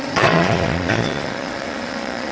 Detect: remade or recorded remade